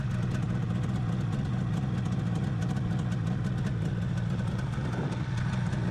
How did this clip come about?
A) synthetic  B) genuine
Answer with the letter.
B